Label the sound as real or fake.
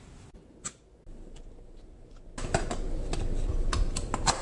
real